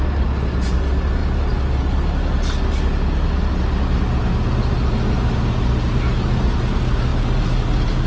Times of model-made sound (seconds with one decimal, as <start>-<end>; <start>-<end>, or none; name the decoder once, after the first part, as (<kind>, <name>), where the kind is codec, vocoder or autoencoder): none